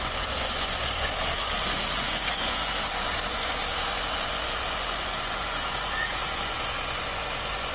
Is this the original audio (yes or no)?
no